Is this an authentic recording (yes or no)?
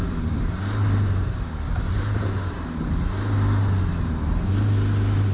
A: yes